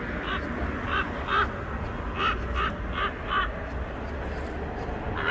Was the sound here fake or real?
real